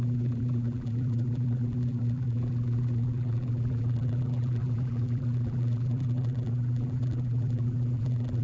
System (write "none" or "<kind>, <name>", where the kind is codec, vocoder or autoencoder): vocoder, BigVGAN v2